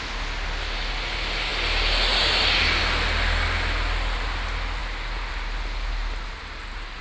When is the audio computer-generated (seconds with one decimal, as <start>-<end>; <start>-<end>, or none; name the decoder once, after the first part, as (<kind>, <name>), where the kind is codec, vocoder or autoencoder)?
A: none

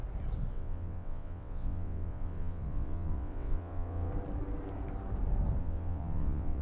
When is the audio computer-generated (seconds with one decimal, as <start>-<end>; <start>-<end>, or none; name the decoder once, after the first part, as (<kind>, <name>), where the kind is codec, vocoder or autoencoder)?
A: 0.5-4.1 (vocoder, WaveNeXt); 5.6-6.6

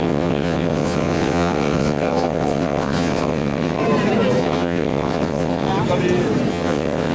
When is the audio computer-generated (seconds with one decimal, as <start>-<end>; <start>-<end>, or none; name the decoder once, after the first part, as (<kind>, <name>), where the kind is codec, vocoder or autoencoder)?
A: 0.0-3.8 (vocoder, WaveNeXt); 4.4-5.7; 6.5-7.1

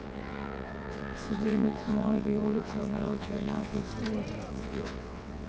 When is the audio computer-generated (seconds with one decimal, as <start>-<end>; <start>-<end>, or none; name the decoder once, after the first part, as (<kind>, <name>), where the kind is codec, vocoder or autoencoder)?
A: 0.0-3.9 (vocoder, WaveNeXt); 4.5-5.5